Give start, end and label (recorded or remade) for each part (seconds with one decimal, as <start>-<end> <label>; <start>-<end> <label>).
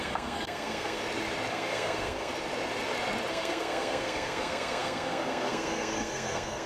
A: 0.0-1.0 remade; 1.0-1.5 recorded; 1.5-2.3 remade; 2.3-3.3 recorded; 3.3-6.7 remade